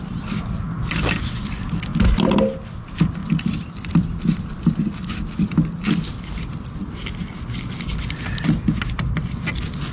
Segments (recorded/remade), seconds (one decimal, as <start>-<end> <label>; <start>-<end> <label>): 0.0-3.2 recorded; 3.2-4.5 remade; 4.5-9.9 recorded